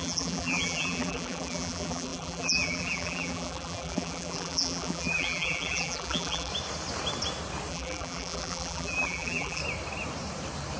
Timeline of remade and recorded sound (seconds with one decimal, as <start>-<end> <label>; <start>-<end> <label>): 0.0-6.5 remade; 6.5-7.7 recorded; 7.7-9.6 remade; 9.6-10.8 recorded